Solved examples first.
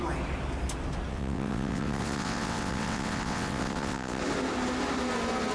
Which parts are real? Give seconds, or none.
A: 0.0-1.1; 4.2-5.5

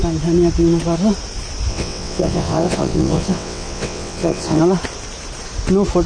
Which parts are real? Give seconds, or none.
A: 0.0-1.7; 4.6-6.1

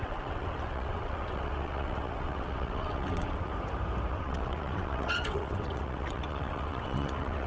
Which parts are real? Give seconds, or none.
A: 3.5-4.1

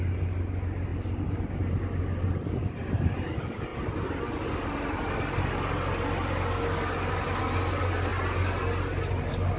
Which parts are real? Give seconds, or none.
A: 0.0-9.6